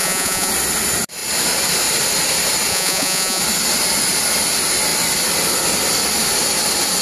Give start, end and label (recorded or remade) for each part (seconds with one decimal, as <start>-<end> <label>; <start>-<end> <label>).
0.0-0.5 remade; 0.5-2.7 recorded; 2.7-3.4 remade; 3.4-7.0 recorded